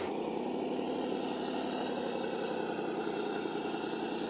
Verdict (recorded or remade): recorded